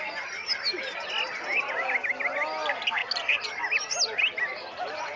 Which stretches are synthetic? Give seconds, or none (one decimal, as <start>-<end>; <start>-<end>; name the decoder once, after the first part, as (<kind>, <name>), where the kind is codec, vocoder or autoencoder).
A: none